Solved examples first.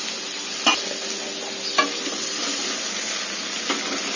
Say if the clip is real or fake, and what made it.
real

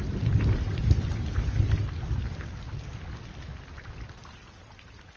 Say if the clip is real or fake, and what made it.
real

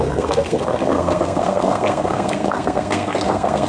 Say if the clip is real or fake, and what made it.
fake, codec, SNAC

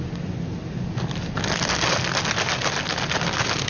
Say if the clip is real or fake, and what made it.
real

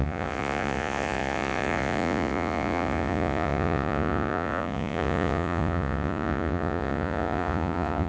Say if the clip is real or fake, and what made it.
fake, vocoder, Vocos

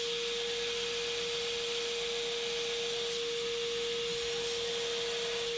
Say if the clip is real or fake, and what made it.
real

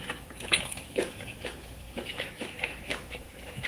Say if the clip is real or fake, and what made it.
fake, autoencoder, DAC-VAE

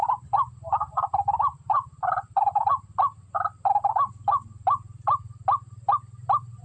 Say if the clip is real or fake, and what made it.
real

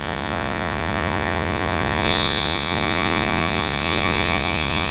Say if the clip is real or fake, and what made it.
fake, vocoder, Vocos